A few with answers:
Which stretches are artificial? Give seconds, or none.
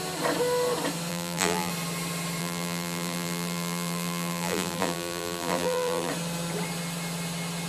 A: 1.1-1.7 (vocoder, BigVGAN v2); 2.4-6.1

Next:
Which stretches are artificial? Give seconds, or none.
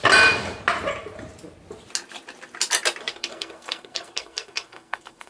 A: 3.1-5.3 (codec, SNAC)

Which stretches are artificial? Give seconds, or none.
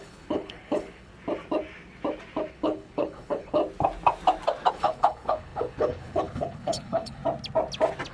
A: 0.0-1.1 (codec, HILCodec); 2.5-3.6; 4.7-7.2